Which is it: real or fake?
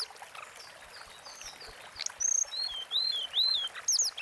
real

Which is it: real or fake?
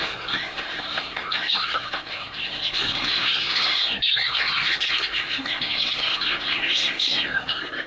fake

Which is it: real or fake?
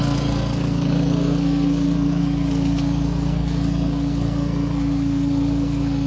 fake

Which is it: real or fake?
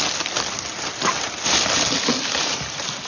real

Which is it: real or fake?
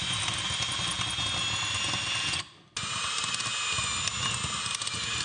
real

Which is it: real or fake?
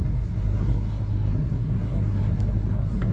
fake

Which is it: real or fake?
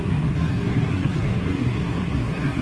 fake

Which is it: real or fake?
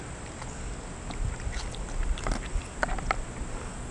real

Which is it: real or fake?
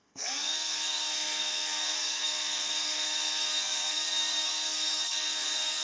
fake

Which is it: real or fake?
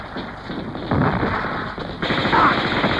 real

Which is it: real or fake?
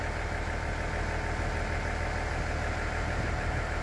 real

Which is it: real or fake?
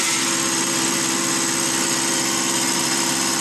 real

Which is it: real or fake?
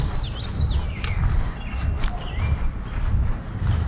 real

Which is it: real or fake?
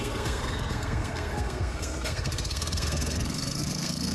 fake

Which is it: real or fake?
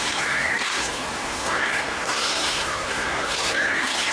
fake